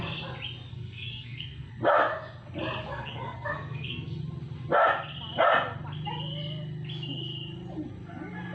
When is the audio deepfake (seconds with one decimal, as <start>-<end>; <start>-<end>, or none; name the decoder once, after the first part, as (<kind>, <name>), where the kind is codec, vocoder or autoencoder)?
0.7-1.7 (codec, SNAC); 2.9-4.2